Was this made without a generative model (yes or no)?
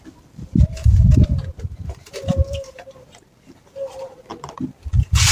no